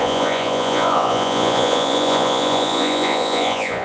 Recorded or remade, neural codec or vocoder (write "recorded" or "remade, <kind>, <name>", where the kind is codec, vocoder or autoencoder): remade, vocoder, Vocos